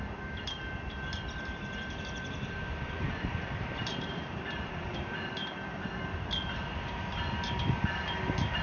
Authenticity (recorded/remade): remade